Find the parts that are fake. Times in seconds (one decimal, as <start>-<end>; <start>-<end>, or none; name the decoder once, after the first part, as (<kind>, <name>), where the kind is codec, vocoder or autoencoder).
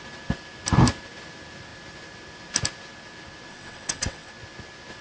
3.5-4.3 (vocoder, WaveNeXt)